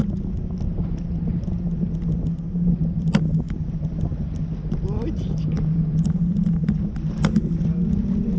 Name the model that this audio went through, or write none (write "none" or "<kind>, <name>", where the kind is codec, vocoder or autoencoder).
none